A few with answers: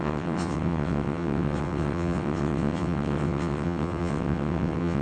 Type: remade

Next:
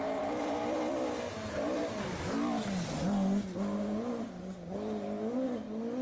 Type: recorded